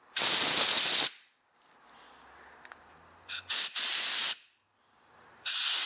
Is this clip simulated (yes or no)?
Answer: no